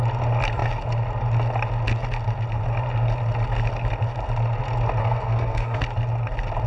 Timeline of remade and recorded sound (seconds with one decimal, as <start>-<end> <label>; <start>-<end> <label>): 0.0-5.0 recorded; 5.0-5.8 remade; 5.8-6.7 recorded